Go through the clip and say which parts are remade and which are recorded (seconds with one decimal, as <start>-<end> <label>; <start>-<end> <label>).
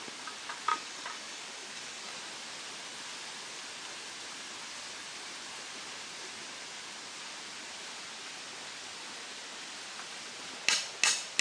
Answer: 0.0-0.7 recorded; 0.7-2.1 remade; 2.1-11.4 recorded